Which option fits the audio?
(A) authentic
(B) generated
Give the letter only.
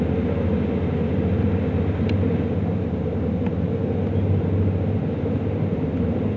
A